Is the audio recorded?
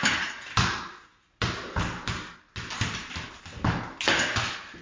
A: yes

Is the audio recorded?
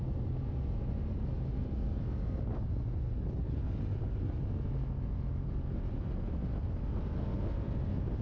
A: yes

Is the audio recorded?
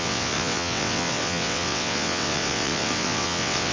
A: no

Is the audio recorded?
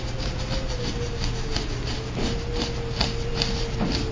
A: yes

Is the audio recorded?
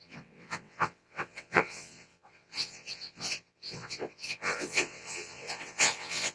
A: no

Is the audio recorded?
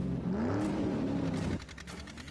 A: yes